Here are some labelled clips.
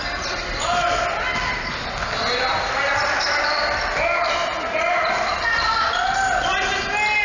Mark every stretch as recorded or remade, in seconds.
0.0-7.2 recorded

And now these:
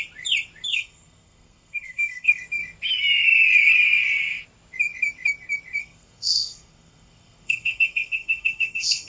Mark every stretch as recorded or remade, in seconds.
0.0-0.7 recorded; 0.7-2.4 remade; 2.4-5.8 recorded; 5.8-9.1 remade